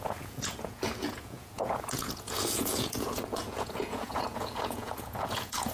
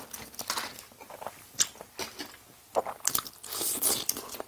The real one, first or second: second